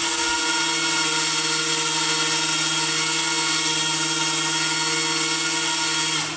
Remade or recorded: recorded